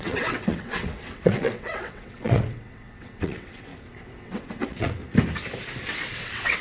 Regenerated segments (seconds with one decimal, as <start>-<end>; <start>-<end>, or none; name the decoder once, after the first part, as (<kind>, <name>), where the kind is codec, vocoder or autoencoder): 0.0-3.7 (vocoder, WaveNeXt); 4.2-5.0; 5.9-6.6